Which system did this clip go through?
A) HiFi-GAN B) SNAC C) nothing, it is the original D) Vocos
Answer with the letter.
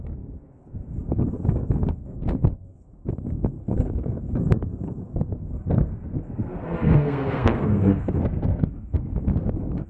B